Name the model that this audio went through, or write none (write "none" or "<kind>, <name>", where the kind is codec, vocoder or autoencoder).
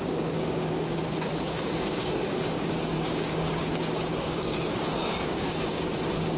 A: codec, DAC